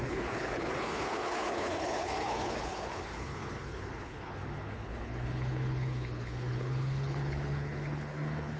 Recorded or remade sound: remade